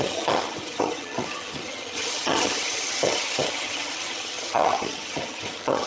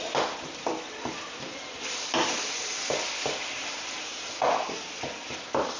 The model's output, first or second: first